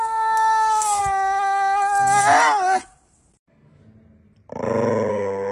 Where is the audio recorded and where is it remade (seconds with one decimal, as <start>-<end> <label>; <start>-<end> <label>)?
0.0-1.0 remade; 1.0-3.4 recorded; 3.4-3.8 remade; 3.8-5.1 recorded; 5.1-5.5 remade